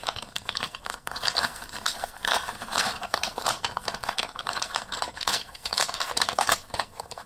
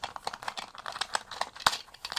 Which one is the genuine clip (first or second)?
second